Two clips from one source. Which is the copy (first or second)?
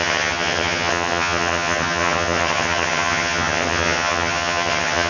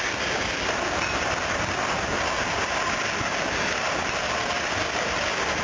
first